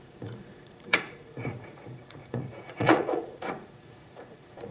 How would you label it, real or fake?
fake